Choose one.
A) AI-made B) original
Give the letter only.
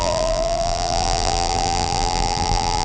A